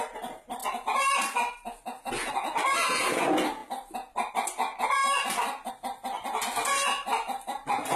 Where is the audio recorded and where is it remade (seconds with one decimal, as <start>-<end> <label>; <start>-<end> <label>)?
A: 0.0-8.0 recorded